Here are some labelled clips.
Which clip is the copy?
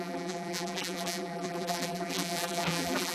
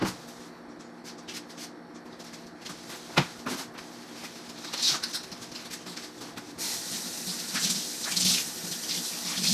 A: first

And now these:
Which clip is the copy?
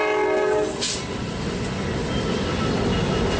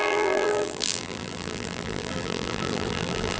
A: second